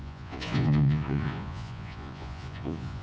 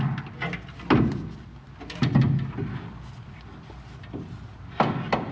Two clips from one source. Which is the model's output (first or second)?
first